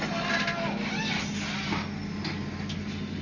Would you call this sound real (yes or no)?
yes